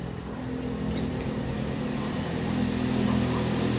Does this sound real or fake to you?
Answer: real